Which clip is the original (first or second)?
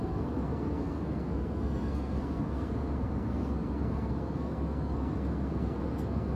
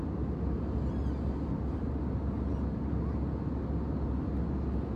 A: second